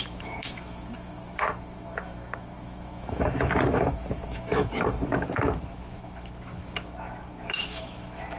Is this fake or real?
fake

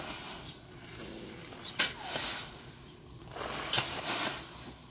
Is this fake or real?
real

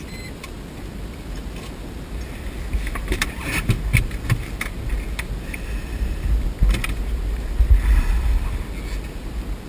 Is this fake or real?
real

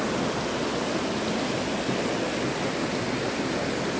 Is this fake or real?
real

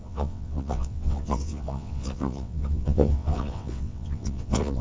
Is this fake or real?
fake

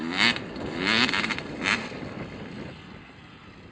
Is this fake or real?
real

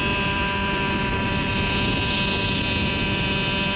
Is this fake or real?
real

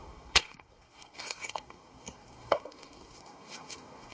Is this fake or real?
fake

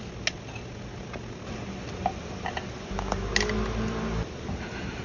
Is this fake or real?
real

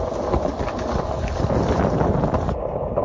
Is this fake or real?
real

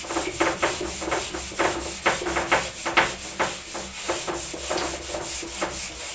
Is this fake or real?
real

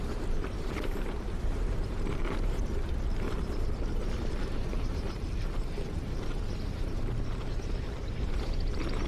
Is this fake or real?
fake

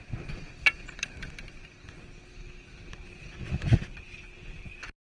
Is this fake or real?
real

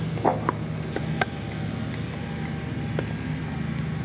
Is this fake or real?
real